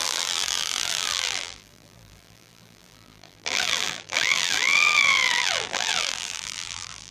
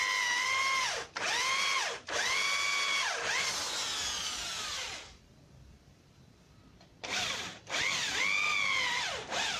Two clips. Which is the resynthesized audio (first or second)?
first